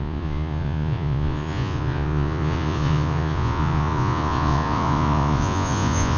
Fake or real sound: fake